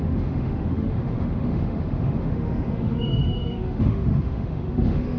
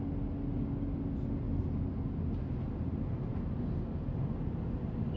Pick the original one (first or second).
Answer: second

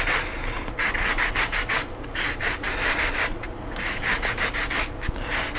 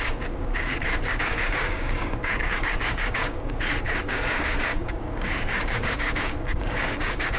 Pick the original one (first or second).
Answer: first